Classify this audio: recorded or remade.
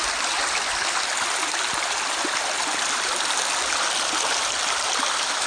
recorded